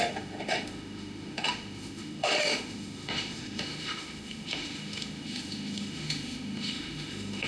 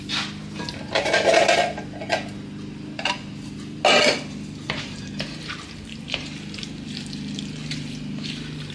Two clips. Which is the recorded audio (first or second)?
second